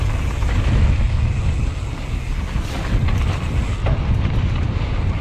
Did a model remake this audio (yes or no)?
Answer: no